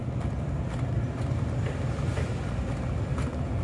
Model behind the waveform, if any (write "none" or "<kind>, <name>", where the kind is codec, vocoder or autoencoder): none